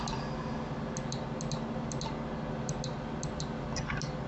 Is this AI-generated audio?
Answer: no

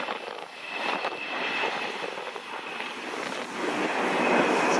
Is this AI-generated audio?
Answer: no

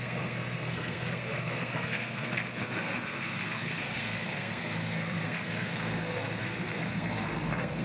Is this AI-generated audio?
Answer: yes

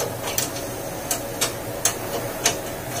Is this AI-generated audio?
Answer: no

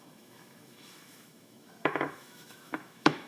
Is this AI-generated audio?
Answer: yes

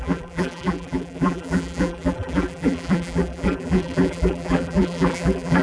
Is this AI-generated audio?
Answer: yes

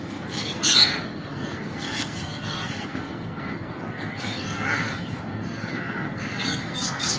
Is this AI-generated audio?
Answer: yes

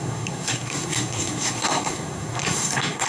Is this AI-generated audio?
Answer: yes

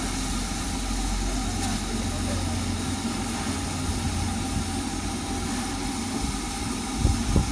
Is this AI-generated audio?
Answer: no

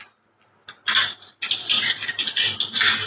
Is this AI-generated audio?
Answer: no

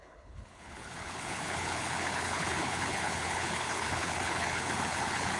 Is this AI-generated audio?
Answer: yes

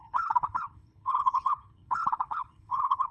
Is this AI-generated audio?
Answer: yes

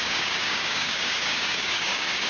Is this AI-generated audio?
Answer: yes